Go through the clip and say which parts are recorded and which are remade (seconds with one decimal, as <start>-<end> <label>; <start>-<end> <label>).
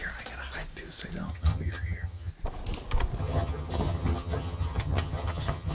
0.0-1.3 recorded; 1.3-2.3 remade; 2.3-3.2 recorded; 3.2-5.7 remade